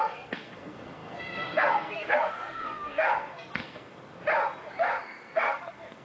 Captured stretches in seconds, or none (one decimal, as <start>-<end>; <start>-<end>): 4.2-4.8